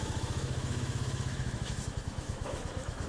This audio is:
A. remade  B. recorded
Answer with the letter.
A